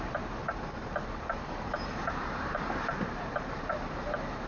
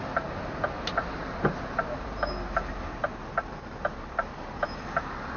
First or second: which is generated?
first